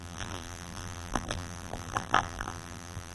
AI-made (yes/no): yes